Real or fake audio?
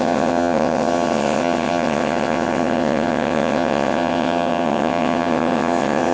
fake